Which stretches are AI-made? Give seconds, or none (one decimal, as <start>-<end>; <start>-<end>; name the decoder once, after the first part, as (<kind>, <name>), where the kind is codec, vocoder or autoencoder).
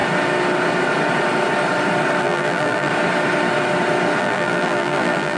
2.2-2.9 (vocoder, BigVGAN v2); 4.2-5.4